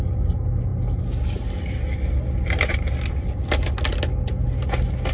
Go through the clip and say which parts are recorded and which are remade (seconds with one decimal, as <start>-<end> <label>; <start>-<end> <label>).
0.0-5.1 recorded